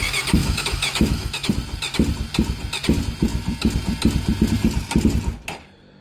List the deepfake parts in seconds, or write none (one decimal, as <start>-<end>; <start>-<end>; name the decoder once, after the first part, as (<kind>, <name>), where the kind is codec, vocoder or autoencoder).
0.4-1.5 (autoencoder, DAC-VAE)